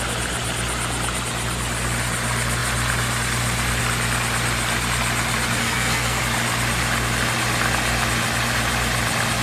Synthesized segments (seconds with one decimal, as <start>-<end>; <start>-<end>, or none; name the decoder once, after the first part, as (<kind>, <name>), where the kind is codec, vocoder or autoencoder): 5.6-6.2 (codec, SNAC)